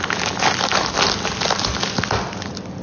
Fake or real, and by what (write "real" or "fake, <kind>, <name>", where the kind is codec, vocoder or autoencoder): real